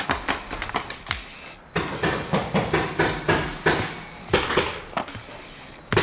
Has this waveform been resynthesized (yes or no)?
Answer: no